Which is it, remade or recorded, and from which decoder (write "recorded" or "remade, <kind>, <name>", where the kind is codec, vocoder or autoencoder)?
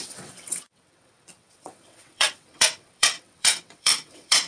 remade, vocoder, WaveNeXt